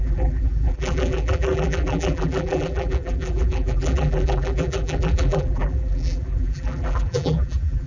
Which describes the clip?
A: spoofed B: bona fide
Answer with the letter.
A